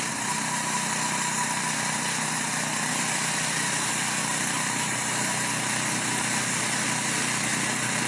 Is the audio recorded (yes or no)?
yes